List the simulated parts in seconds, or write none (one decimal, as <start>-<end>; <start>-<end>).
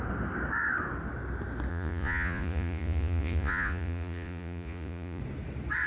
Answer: 1.7-5.2